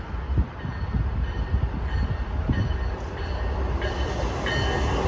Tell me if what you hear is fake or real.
real